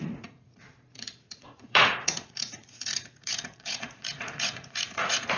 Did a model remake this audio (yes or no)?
yes